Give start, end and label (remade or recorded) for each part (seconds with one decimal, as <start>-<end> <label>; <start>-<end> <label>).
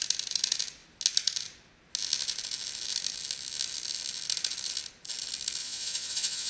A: 0.0-5.6 recorded; 5.6-6.5 remade